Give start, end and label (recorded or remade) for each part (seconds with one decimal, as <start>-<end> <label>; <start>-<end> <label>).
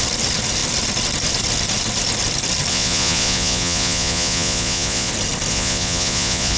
0.0-2.7 recorded; 2.7-5.1 remade; 5.1-5.5 recorded; 5.5-6.6 remade